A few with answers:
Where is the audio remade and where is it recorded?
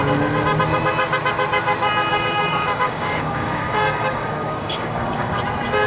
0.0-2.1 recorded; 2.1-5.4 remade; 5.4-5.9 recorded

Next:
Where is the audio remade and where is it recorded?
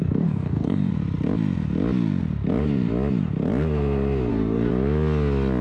0.0-0.9 remade; 0.9-4.3 recorded; 4.3-4.7 remade; 4.7-5.6 recorded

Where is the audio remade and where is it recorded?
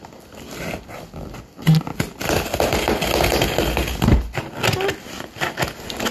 0.0-6.1 recorded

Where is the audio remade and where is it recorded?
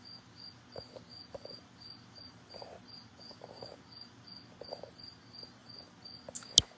0.0-6.8 recorded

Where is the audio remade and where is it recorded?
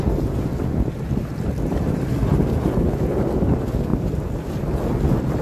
0.0-5.4 recorded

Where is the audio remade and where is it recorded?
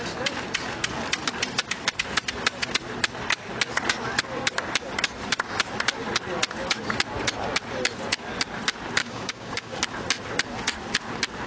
0.0-9.0 recorded; 9.0-9.8 remade; 9.8-11.5 recorded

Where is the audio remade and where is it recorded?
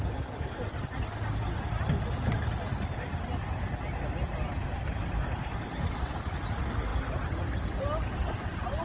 0.0-8.8 recorded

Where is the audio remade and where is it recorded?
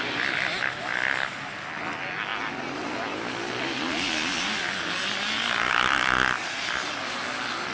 0.0-7.7 recorded